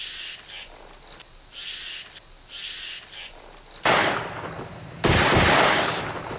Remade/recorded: recorded